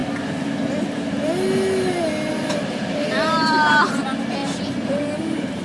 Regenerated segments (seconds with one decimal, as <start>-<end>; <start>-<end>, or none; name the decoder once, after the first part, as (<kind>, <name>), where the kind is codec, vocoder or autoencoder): 2.3-3.9 (vocoder, BigVGAN v2); 4.4-4.9